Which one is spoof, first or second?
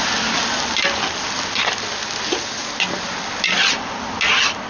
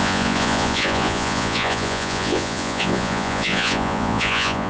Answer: second